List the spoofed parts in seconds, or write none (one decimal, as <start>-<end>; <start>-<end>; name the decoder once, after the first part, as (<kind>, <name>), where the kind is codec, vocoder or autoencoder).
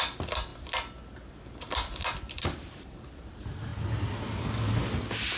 none